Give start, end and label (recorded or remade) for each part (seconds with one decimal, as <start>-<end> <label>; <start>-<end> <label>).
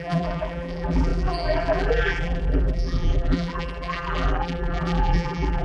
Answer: 0.0-5.6 remade